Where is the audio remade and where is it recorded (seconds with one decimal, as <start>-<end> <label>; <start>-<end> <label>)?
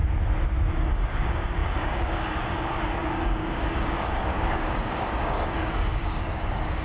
0.0-0.7 recorded; 0.7-6.8 remade